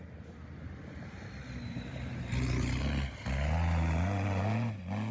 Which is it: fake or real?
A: real